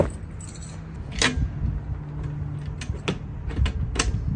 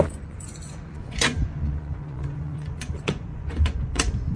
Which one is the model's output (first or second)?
second